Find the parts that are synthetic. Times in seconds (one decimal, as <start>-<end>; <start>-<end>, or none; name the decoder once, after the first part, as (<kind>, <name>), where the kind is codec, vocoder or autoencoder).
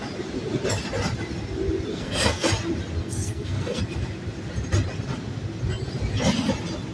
1.9-2.5 (codec, SNAC); 3.0-3.8